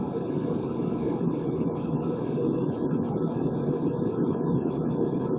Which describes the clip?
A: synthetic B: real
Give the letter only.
A